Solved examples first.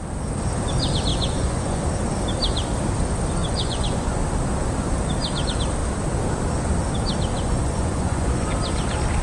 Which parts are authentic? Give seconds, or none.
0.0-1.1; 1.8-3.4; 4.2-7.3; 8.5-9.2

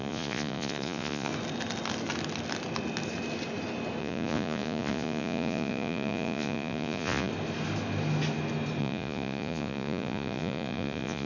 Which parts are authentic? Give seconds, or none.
1.3-4.0; 7.3-8.8

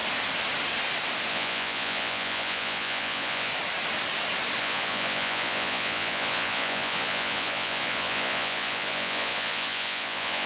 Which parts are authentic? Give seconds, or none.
0.0-1.3; 3.5-4.6

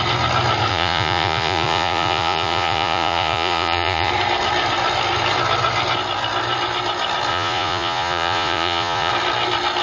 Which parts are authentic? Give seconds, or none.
0.0-0.7; 4.1-7.3; 9.1-9.8

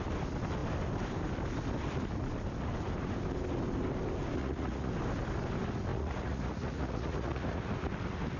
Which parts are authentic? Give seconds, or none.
0.0-4.4; 4.9-5.9; 7.7-8.4

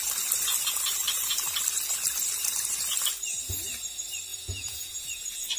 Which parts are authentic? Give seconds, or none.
0.0-4.3

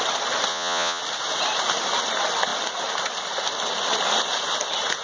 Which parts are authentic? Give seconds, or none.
0.0-0.5; 1.0-5.0

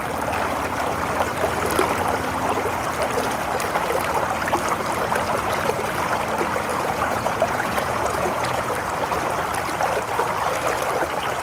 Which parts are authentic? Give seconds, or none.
0.0-6.7; 8.7-11.4